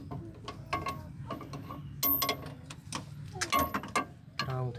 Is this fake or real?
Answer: real